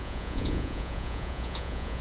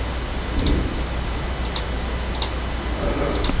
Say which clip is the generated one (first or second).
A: first